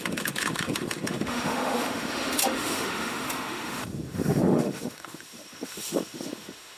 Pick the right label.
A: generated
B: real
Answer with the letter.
A